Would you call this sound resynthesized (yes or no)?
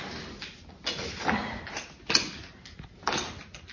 no